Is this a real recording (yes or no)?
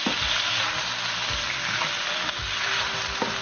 yes